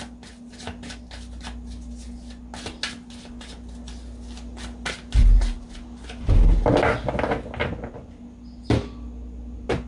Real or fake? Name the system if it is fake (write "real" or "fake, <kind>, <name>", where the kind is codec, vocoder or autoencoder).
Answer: real